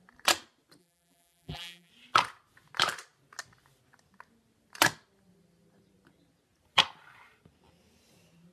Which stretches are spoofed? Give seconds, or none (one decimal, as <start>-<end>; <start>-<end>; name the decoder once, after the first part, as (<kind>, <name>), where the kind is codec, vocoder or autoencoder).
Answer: 0.8-1.9 (vocoder, BigVGAN v2)

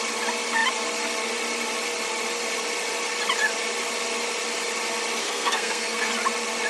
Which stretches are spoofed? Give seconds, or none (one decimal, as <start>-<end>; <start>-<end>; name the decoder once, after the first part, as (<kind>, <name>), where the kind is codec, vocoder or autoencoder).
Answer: 5.2-6.1 (codec, SNAC)

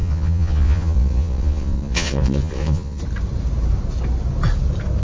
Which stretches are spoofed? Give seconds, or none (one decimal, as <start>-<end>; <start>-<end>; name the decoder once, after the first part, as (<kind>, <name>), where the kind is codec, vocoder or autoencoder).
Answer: 0.0-3.0 (vocoder, Vocos)

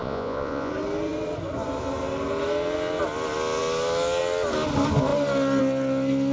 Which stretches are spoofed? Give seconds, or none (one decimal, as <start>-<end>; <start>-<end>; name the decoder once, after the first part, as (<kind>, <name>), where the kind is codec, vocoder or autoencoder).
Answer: 0.0-0.7 (vocoder, Vocos)

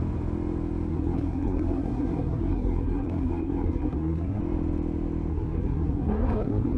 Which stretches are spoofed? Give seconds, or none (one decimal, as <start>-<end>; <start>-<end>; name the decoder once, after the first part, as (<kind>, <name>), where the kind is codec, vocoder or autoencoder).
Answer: 0.9-4.4 (codec, SNAC); 5.3-6.8

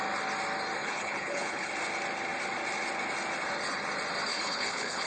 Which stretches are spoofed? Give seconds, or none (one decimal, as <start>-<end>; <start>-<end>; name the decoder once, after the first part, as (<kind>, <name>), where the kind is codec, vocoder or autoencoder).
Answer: 0.8-1.7 (codec, HILCodec); 4.3-5.1

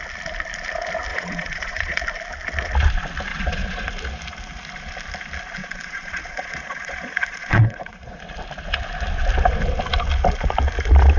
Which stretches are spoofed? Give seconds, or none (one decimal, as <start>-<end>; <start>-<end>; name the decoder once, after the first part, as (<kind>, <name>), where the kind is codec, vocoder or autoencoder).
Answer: 1.1-2.0 (vocoder, Vocos); 3.3-3.9; 5.6-8.2